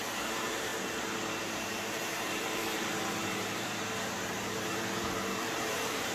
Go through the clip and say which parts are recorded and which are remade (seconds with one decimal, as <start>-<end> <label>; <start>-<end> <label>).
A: 0.0-0.7 remade; 0.7-1.4 recorded; 1.4-6.1 remade